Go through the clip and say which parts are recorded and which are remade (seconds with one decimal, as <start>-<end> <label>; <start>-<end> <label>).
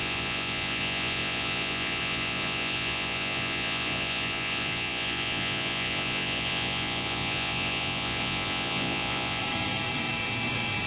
0.0-9.4 remade; 9.4-10.9 recorded